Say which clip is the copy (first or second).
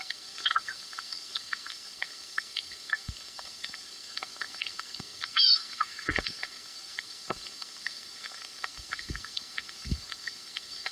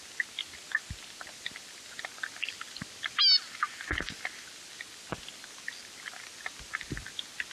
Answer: first